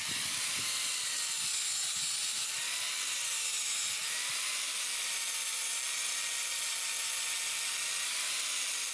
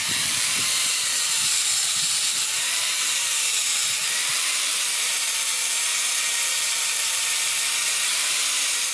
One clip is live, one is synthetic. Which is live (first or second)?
first